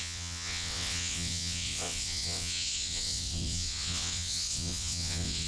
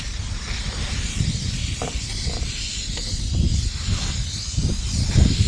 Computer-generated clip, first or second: first